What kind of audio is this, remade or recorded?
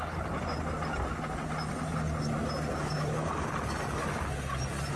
recorded